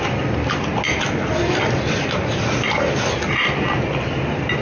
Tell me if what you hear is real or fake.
real